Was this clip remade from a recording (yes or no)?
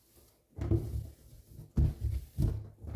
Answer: no